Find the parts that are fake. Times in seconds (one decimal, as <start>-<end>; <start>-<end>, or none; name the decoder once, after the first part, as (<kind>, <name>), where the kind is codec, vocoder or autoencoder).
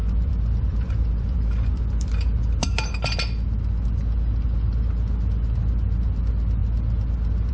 0.0-2.6 (vocoder, BigVGAN v2)